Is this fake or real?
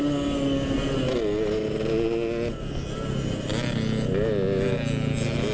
real